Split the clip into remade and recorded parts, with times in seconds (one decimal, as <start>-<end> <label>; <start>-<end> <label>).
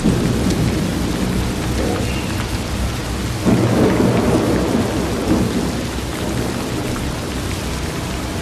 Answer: 0.0-8.4 recorded